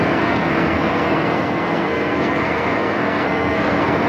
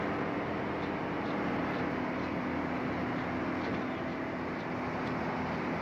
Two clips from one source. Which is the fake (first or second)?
first